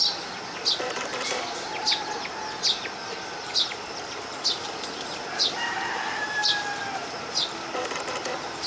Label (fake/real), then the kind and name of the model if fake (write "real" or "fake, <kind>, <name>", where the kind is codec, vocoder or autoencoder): fake, vocoder, BigVGAN v2